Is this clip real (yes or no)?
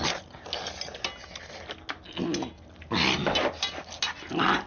yes